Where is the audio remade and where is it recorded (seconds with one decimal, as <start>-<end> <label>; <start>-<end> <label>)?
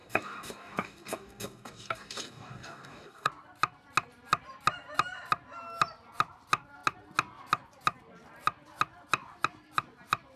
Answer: 0.0-3.3 remade; 3.3-10.4 recorded